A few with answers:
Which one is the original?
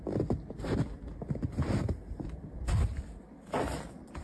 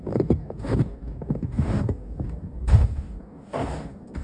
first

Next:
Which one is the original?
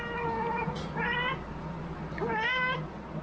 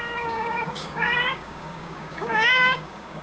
first